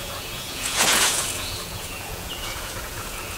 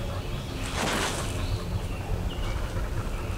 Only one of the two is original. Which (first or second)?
second